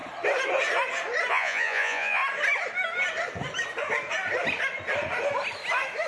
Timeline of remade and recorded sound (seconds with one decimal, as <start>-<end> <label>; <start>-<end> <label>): 0.0-1.3 recorded; 1.3-2.2 remade; 2.2-6.1 recorded